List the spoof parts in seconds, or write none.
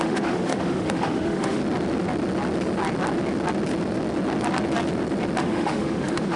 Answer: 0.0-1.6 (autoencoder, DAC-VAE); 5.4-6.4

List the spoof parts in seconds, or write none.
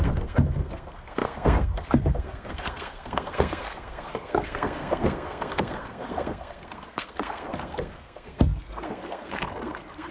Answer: 0.0-10.1 (codec, SNAC)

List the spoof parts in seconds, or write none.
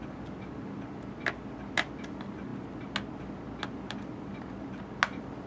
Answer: none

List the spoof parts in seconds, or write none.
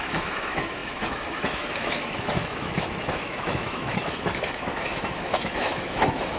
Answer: 0.0-6.4 (autoencoder, DAC-VAE)